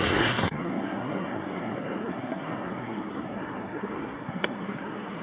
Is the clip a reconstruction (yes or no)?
yes